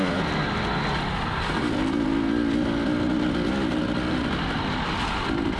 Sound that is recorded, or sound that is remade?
recorded